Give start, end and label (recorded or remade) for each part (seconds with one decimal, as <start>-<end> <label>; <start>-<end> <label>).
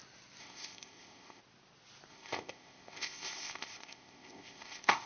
0.0-0.4 recorded; 0.4-1.4 remade; 1.4-2.1 recorded; 2.1-5.1 remade